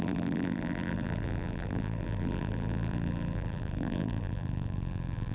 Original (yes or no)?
no